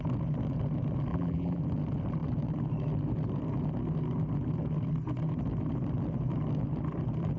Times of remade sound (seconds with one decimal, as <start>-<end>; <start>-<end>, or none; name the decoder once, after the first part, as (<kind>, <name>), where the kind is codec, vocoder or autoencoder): 1.1-1.6 (vocoder, BigVGAN v2)

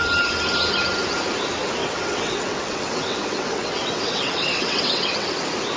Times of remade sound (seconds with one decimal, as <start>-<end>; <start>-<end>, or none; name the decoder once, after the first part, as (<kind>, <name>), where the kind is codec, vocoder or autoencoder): 1.8-5.3 (vocoder, WaveNeXt)

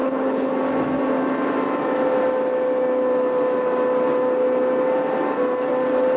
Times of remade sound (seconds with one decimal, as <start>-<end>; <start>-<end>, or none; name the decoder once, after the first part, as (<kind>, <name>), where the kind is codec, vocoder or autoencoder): 0.0-0.5 (codec, HILCodec)

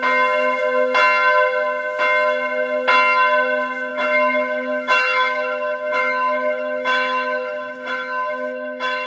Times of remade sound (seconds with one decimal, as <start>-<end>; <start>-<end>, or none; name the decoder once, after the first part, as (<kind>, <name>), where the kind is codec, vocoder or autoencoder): 3.9-9.1 (autoencoder, DAC-VAE)

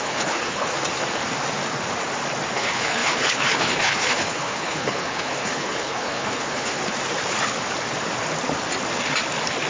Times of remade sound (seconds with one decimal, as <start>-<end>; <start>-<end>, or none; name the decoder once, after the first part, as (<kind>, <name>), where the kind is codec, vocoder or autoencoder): 0.0-0.7 (codec, HILCodec); 2.5-6.8

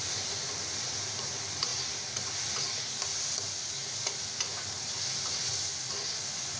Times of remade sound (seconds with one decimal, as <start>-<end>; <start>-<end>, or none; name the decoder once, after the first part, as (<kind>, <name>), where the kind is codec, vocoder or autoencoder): none